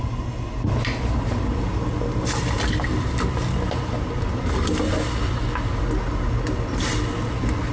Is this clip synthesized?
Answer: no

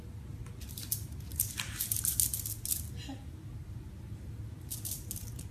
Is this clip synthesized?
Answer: no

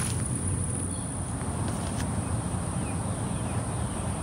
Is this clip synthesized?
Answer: no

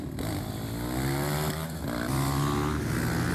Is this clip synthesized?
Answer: no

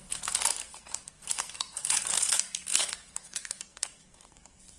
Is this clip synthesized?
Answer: yes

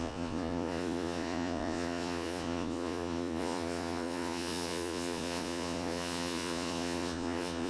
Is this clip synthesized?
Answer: yes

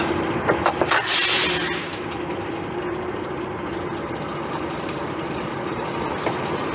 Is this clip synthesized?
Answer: no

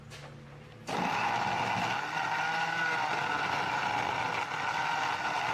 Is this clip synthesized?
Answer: no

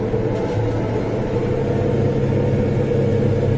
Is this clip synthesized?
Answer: no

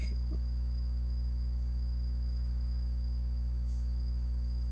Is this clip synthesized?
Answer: yes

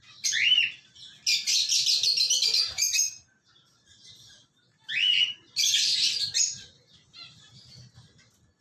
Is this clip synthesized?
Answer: no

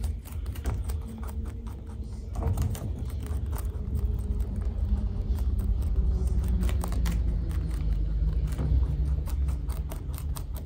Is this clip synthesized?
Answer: yes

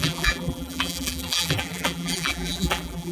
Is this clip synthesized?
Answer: yes